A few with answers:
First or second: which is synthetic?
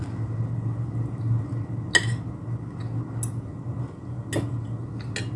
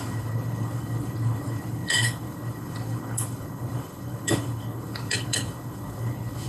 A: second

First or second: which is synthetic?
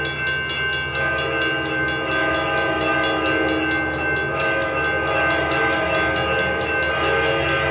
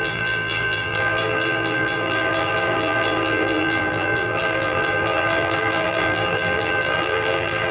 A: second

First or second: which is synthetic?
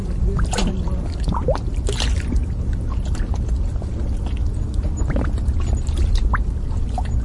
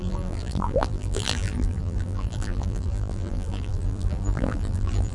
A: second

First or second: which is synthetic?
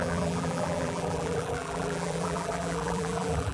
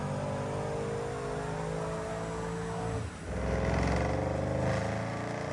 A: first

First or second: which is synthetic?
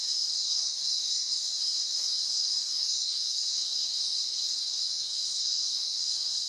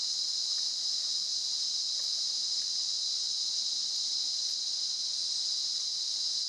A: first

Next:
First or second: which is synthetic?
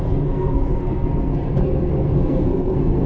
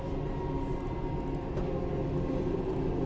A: first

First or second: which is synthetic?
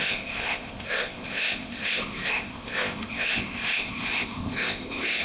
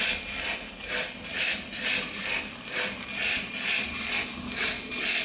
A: first